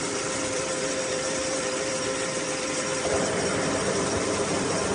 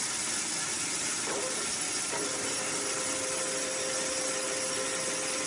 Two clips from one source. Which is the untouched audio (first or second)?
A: second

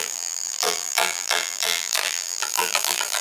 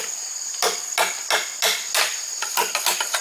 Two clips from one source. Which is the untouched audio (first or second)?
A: second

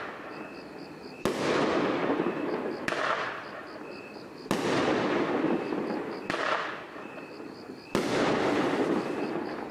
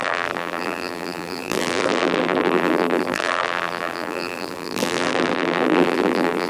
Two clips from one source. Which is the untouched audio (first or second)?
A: first